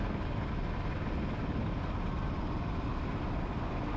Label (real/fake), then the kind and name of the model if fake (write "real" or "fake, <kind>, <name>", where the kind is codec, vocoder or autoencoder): real